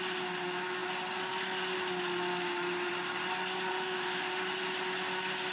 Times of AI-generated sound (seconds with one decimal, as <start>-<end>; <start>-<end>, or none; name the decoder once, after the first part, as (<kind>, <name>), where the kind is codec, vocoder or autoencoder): 3.7-4.4 (autoencoder, DAC-VAE)